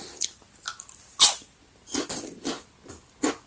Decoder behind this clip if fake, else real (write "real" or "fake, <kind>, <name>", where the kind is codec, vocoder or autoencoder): real